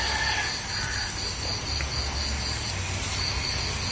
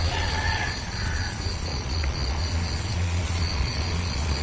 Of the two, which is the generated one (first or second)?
second